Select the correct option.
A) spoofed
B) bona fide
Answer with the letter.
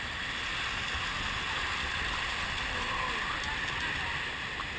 B